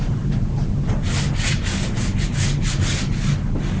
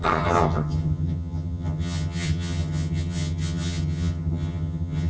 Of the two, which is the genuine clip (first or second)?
first